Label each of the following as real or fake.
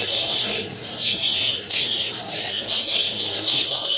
fake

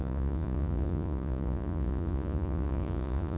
fake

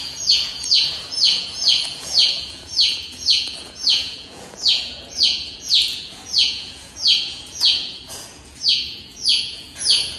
fake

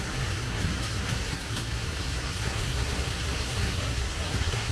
fake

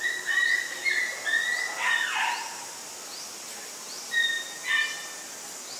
real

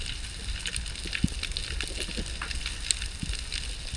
real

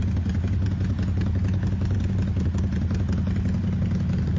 real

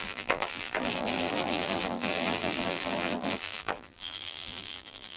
fake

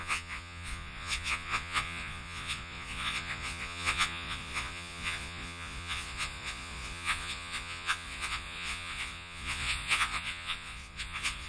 fake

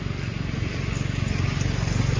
real